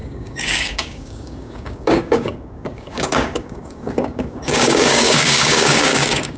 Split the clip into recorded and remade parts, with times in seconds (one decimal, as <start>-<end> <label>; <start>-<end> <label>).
0.0-6.4 remade

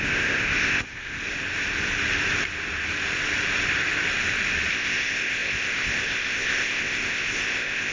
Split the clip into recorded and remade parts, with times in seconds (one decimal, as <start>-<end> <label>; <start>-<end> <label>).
0.0-1.2 remade; 1.2-4.7 recorded; 4.7-7.9 remade

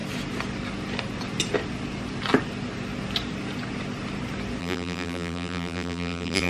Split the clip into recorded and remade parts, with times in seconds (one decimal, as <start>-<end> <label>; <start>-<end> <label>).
0.0-4.6 recorded; 4.6-6.5 remade

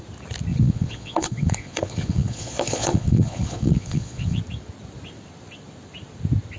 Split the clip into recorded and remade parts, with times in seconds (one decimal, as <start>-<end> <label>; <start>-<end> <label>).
0.0-0.5 recorded; 0.5-4.4 remade; 4.4-6.6 recorded

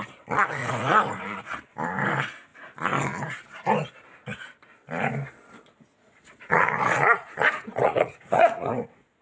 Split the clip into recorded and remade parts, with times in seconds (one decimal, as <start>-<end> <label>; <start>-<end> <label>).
0.0-0.6 recorded; 0.6-1.4 remade; 1.4-5.9 recorded; 5.9-9.2 remade

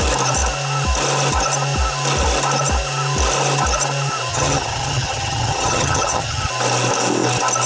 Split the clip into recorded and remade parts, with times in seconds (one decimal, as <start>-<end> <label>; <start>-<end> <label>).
0.0-4.3 recorded; 4.3-6.5 remade; 6.5-7.7 recorded

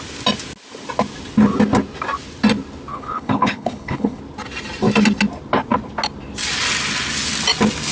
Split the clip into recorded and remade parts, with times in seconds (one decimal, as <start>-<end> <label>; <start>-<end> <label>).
0.0-2.9 recorded; 2.9-4.2 remade; 4.2-7.9 recorded

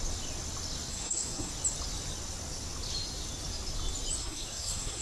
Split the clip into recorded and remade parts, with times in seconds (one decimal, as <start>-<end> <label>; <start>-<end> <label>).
0.0-0.9 recorded; 0.9-1.5 remade; 1.5-4.2 recorded; 4.2-5.0 remade